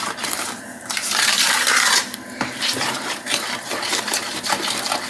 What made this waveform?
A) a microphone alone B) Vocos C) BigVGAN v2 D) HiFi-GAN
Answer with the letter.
C